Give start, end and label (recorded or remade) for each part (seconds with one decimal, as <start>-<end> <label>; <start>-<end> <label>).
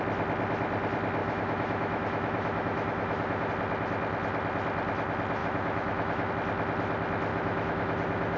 0.0-1.2 recorded; 1.2-3.5 remade; 3.5-5.4 recorded; 5.4-6.3 remade; 6.3-7.3 recorded; 7.3-8.4 remade